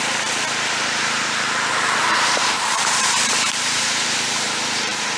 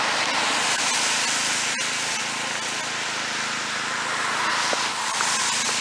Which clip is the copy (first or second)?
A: first